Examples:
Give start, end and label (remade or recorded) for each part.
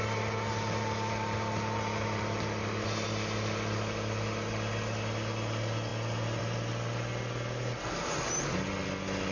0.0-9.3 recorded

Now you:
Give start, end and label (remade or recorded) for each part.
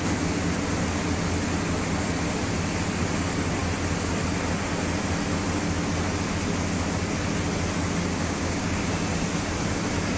0.0-8.2 recorded; 8.2-8.9 remade; 8.9-10.2 recorded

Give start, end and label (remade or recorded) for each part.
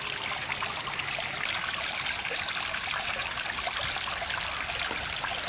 0.0-5.5 recorded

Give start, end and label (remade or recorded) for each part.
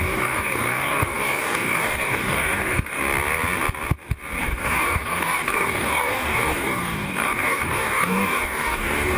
0.0-3.0 remade; 3.0-4.4 recorded; 4.4-9.2 remade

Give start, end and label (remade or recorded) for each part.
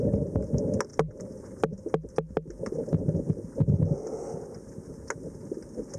0.0-6.0 recorded